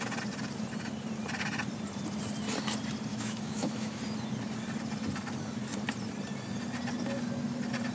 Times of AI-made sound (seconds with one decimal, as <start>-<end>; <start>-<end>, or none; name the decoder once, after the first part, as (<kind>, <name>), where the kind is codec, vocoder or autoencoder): 3.1-4.0 (autoencoder, DAC-VAE)